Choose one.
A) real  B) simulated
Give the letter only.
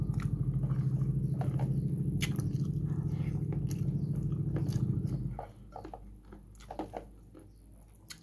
A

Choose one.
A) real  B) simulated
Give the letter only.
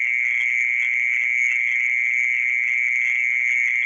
A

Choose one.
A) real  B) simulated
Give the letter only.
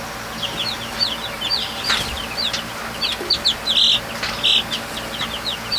A